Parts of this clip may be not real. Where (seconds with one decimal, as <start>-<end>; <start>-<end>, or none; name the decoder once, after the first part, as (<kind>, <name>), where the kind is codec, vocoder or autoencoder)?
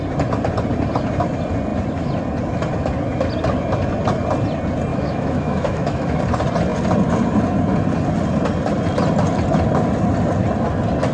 4.9-6.2 (autoencoder, DAC-VAE)